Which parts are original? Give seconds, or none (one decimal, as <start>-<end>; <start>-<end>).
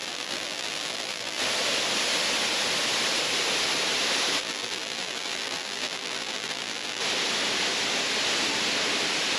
1.4-4.4; 7.0-9.4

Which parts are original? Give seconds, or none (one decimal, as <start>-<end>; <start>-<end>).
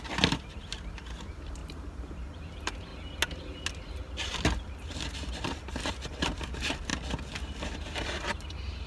2.9-5.9; 6.9-7.4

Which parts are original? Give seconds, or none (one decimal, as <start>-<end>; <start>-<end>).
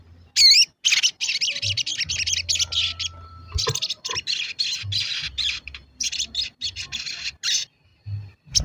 0.0-8.6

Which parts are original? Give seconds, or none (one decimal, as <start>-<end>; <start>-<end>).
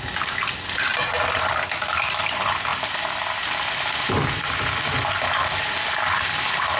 0.0-2.7; 4.7-6.8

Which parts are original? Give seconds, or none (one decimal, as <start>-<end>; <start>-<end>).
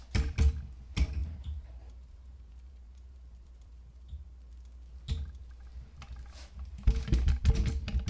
0.0-1.2; 4.5-8.1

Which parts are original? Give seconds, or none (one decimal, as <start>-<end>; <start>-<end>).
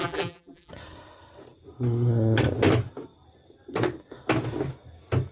0.7-5.3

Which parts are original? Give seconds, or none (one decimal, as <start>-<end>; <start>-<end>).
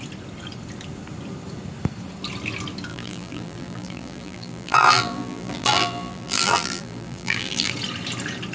0.0-2.9; 7.7-8.5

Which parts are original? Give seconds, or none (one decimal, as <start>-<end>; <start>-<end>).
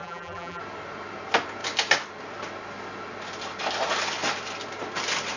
0.6-5.4